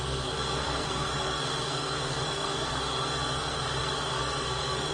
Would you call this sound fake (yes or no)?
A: yes